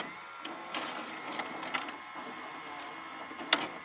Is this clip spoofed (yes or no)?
no